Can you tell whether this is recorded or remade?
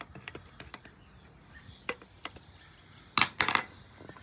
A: recorded